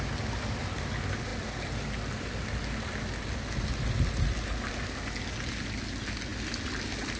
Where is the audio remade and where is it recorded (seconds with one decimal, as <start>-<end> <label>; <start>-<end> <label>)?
0.0-7.2 recorded